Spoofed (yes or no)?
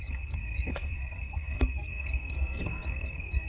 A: yes